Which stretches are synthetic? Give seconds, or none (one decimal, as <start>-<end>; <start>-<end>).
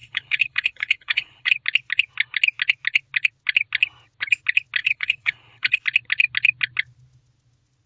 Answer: 0.0-1.5; 4.8-5.8